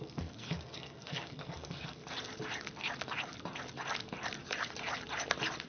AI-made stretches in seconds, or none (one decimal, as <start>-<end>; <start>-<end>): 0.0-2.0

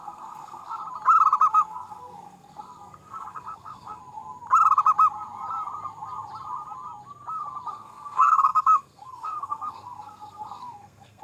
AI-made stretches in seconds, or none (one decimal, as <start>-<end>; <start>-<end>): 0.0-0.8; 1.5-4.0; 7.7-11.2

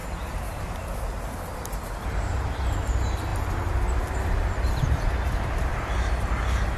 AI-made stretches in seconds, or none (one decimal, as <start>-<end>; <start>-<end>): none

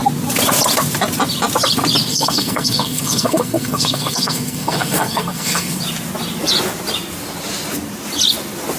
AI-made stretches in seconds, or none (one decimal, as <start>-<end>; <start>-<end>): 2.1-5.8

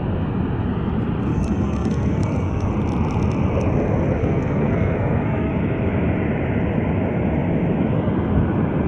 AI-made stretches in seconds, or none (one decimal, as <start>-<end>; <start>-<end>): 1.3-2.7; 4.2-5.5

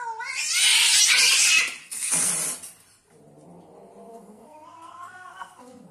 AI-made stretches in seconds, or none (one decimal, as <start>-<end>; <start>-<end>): 1.8-2.3; 4.1-5.9